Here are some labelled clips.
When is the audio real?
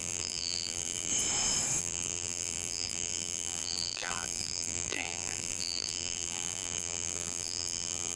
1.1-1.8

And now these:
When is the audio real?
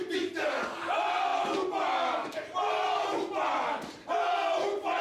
0.0-5.0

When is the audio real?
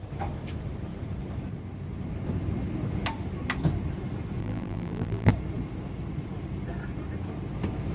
0.0-4.4; 5.3-7.9